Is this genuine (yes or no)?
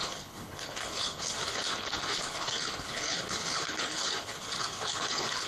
no